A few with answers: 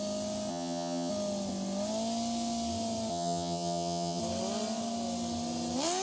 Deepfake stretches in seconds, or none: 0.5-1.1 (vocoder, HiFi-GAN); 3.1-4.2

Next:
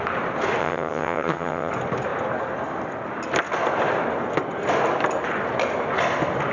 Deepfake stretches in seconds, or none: 0.6-1.7 (vocoder, HiFi-GAN)

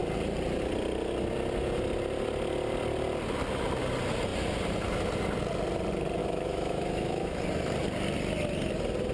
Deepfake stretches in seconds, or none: 6.2-7.4 (autoencoder, DAC-VAE)